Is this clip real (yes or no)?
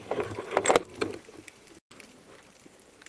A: yes